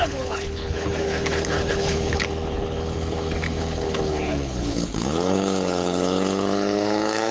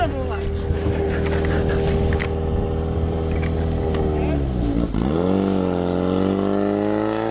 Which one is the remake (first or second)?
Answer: first